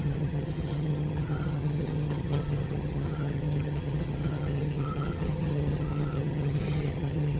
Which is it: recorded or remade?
remade